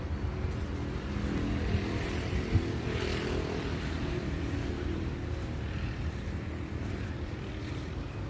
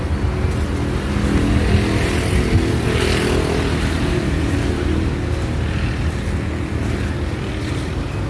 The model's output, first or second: first